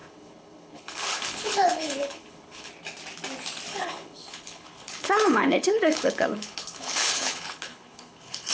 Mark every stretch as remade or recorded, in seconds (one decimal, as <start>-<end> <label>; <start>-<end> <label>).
0.0-2.7 remade; 2.7-3.7 recorded; 3.7-8.5 remade